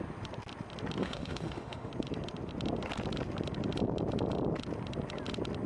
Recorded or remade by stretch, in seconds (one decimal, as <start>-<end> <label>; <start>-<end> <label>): 0.0-1.0 recorded; 1.0-1.9 remade; 1.9-5.7 recorded